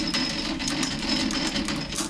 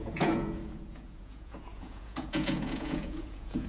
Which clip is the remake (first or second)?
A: second